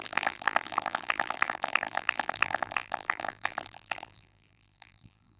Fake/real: fake